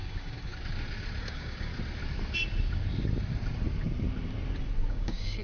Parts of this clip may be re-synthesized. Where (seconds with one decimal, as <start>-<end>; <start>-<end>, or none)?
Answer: 0.0-0.5; 1.2-1.7; 4.9-5.4